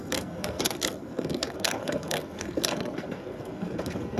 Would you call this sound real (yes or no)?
no